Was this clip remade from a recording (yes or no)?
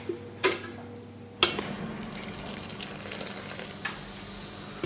no